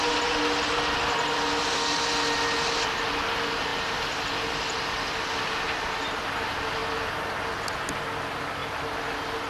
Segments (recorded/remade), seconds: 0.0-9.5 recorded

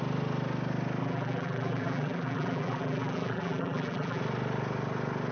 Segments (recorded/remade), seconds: 0.0-1.0 recorded; 1.0-4.2 remade; 4.2-5.3 recorded